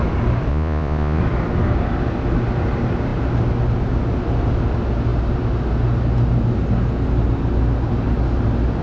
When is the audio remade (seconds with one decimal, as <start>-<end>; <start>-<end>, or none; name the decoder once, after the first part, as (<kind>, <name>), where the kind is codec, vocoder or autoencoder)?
0.5-1.2 (vocoder, Vocos)